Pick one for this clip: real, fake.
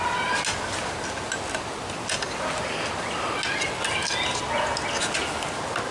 real